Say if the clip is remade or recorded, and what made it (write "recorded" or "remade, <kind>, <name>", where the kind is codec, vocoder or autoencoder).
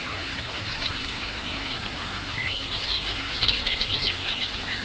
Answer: remade, codec, SNAC